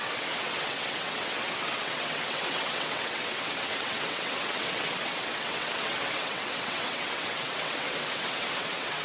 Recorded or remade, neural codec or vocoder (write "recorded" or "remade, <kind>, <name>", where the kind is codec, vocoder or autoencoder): remade, vocoder, WaveNeXt